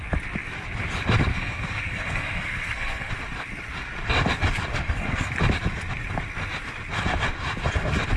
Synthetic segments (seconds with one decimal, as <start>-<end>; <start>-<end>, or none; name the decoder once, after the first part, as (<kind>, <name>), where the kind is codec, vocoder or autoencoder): 1.3-3.1 (codec, SNAC); 4.7-5.3